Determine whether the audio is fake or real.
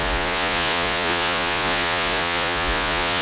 fake